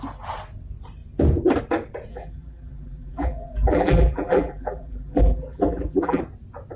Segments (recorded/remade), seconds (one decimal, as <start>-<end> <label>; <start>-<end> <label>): 0.0-2.1 recorded; 2.1-6.2 remade; 6.2-6.8 recorded